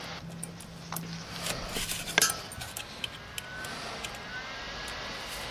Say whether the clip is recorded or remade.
recorded